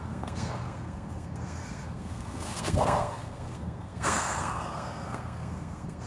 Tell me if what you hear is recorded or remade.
remade